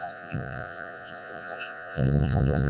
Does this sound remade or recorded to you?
remade